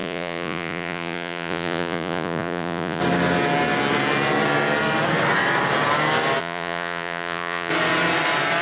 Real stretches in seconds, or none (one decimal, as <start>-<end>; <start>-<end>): 3.0-6.4; 7.7-8.6